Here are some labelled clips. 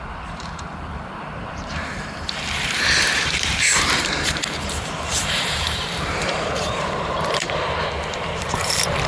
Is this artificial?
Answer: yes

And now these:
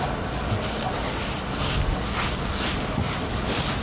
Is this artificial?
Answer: no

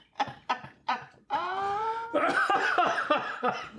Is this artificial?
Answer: yes